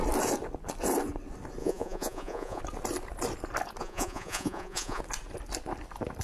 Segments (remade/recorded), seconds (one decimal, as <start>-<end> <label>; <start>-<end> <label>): 0.0-1.6 recorded; 1.6-2.6 remade; 2.6-3.8 recorded; 3.8-5.0 remade; 5.0-6.2 recorded